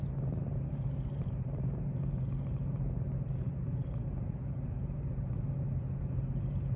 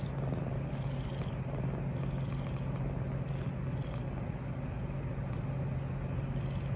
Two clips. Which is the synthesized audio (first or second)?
first